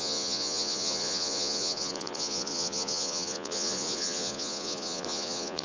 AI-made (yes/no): yes